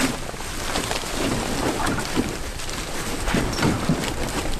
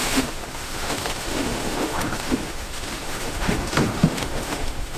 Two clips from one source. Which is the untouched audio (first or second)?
first